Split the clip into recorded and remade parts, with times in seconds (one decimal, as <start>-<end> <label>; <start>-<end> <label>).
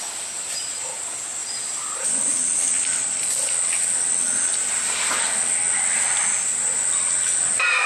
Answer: 0.0-7.9 recorded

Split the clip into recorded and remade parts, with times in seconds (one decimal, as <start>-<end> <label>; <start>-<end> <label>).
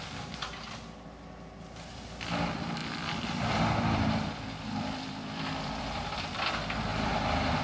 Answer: 0.0-2.8 recorded; 2.8-6.2 remade; 6.2-6.9 recorded; 6.9-7.6 remade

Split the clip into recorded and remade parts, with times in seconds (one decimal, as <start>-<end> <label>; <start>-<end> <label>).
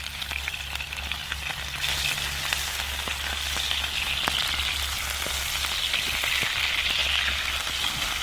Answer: 0.0-8.2 recorded